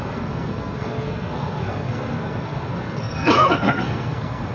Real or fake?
fake